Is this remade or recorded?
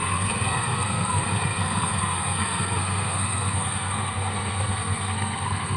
remade